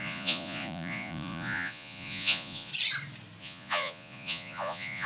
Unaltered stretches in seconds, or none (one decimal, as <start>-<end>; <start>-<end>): 2.7-3.4